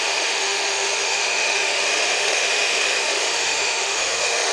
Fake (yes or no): yes